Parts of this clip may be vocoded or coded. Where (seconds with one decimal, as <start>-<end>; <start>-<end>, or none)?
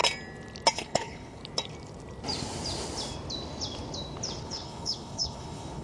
0.7-1.4; 4.4-5.8